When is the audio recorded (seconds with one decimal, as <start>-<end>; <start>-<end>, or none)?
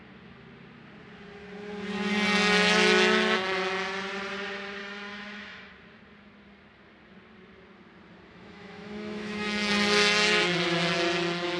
0.0-4.8; 5.7-8.3; 9.7-11.6